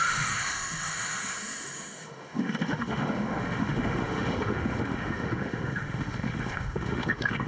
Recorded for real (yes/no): no